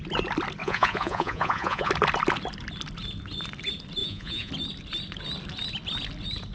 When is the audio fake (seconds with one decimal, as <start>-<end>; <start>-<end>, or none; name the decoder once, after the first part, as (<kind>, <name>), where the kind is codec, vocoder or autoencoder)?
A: 0.6-1.9 (vocoder, Vocos); 4.0-4.5